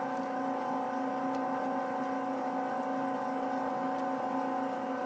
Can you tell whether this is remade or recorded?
recorded